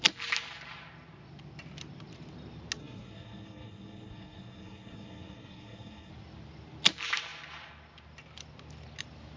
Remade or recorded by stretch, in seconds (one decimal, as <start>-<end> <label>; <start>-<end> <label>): 0.0-2.8 recorded; 2.8-6.1 remade; 6.1-9.4 recorded